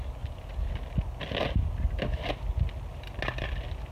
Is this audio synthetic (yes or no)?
no